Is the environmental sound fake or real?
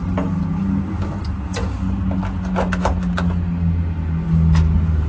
real